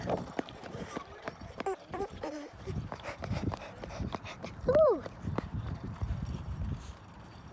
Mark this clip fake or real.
fake